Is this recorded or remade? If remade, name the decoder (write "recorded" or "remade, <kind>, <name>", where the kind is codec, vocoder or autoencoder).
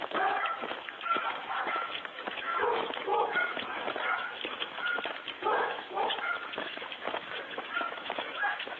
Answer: remade, autoencoder, DAC-VAE